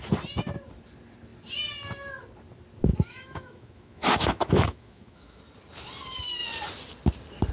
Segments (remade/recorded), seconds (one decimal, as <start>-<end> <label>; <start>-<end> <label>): 0.0-2.9 recorded; 2.9-5.4 remade; 5.4-7.5 recorded